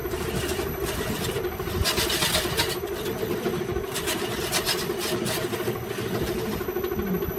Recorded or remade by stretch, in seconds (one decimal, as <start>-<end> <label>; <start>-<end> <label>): 0.0-4.4 remade; 4.4-7.4 recorded